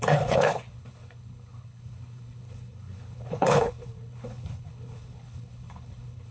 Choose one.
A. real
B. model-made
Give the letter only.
B